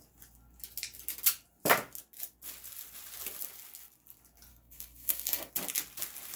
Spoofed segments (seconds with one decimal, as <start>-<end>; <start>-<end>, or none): 4.5-5.5

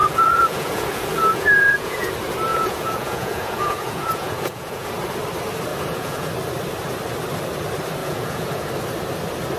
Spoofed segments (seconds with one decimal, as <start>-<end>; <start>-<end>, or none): 0.0-2.1; 2.5-4.9; 5.7-6.3; 8.0-8.7

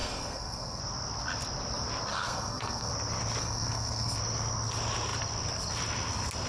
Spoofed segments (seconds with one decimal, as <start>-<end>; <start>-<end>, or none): 0.0-0.8; 2.1-2.9; 3.4-4.2

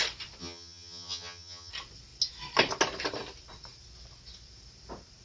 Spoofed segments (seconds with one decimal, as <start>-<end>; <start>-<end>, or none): 0.4-1.7